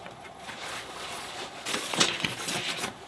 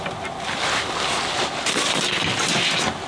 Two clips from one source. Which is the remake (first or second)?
first